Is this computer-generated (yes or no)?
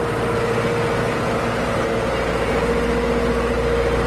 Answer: no